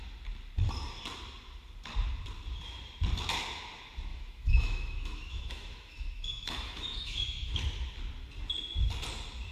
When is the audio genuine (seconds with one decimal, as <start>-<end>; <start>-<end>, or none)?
0.0-4.1; 7.6-9.5